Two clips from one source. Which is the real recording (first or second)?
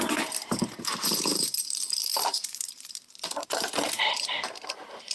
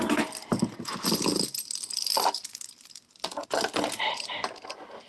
second